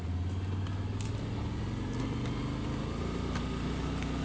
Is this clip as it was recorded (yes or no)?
yes